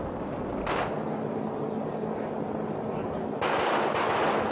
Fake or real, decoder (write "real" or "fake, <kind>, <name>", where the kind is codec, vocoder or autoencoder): real